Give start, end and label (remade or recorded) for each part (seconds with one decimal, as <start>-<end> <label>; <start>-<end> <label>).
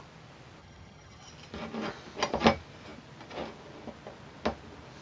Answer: 0.0-0.6 recorded; 0.6-1.3 remade; 1.3-5.0 recorded